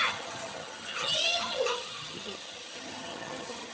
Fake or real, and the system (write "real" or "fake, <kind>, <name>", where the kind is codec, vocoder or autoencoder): fake, vocoder, HiFi-GAN